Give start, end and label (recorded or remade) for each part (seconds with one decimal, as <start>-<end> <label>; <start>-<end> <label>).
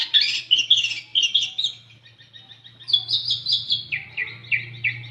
0.0-5.1 recorded